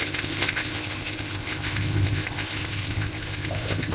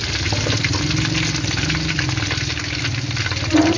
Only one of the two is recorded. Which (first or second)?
second